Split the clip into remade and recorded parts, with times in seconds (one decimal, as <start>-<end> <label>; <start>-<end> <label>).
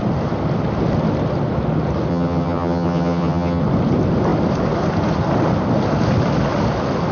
0.0-2.1 recorded; 2.1-3.6 remade; 3.6-7.1 recorded